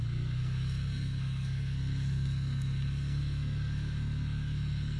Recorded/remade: remade